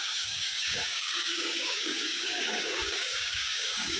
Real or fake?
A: fake